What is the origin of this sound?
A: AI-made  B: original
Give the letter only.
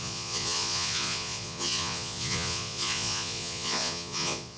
A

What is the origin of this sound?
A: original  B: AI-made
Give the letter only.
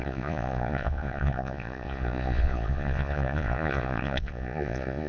B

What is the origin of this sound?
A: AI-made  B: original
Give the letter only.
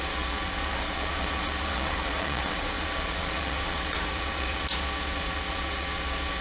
A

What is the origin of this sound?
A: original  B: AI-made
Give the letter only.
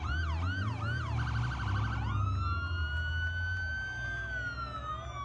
A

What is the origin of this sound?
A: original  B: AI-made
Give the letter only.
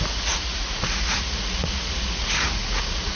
B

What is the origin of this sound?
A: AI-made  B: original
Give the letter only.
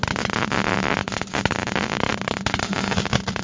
B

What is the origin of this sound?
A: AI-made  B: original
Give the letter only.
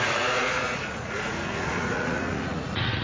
A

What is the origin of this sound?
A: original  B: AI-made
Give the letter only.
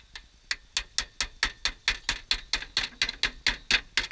A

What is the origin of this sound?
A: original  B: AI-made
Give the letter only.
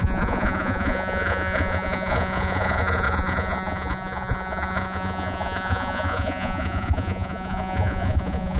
B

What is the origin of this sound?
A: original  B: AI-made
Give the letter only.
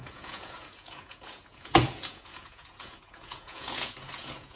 B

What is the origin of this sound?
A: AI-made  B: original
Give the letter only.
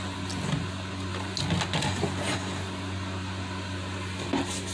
B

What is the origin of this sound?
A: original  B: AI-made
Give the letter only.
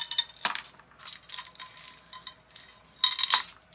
A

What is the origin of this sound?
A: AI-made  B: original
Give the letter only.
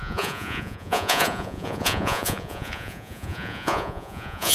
A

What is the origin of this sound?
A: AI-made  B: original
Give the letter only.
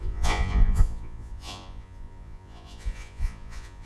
A